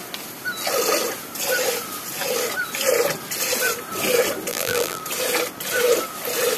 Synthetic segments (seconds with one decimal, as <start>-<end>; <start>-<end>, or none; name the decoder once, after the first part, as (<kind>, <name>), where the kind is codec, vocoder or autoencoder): 4.5-5.0 (vocoder, BigVGAN v2)